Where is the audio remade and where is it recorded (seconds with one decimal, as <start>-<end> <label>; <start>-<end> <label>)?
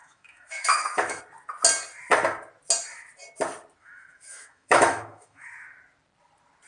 0.0-1.2 remade; 1.2-3.8 recorded; 3.8-5.5 remade; 5.5-6.7 recorded